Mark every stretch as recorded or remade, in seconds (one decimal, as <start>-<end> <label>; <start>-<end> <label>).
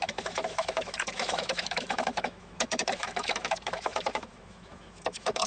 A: 0.0-5.5 remade